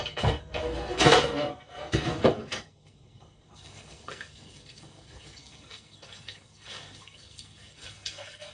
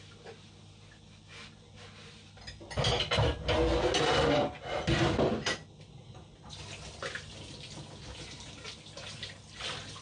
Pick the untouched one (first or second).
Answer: second